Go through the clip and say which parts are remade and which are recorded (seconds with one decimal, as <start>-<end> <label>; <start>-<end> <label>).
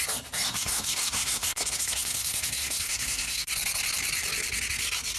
0.0-0.5 recorded; 0.5-3.5 remade; 3.5-5.2 recorded